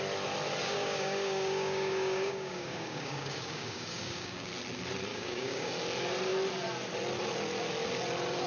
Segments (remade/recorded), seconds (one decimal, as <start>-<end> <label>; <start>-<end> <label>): 0.0-0.6 recorded; 0.6-4.5 remade; 4.5-5.1 recorded; 5.1-5.7 remade; 5.7-8.5 recorded